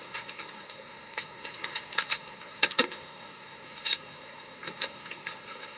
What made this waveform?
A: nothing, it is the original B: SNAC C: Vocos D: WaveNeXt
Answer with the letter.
B